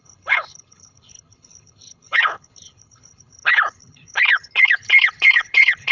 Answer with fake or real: fake